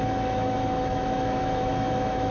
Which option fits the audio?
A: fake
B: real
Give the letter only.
A